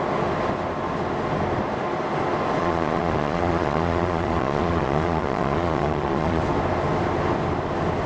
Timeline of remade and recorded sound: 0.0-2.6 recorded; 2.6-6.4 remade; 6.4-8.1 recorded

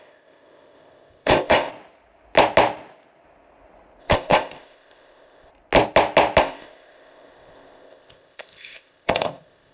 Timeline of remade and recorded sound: 0.0-1.7 remade; 1.7-4.0 recorded; 4.0-5.5 remade; 5.5-6.4 recorded; 6.4-9.7 remade

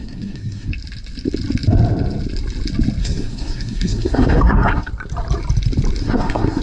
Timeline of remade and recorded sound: 0.0-0.7 remade; 0.7-3.0 recorded; 3.0-4.9 remade; 4.9-6.0 recorded; 6.0-6.6 remade

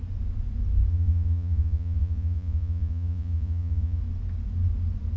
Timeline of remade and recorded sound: 0.0-0.9 recorded; 0.9-4.0 remade; 4.0-5.2 recorded